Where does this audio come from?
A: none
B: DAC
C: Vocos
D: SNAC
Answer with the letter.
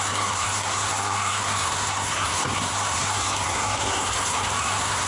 D